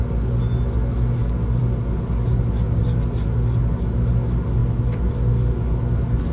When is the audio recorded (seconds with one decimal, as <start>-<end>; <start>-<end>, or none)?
0.0-6.3